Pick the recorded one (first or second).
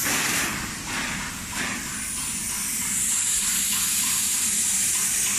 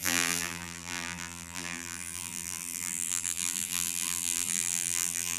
first